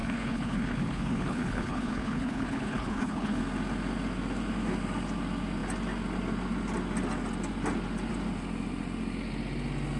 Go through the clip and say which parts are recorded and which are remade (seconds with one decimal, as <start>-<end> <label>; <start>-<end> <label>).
0.0-3.4 remade; 3.4-10.0 recorded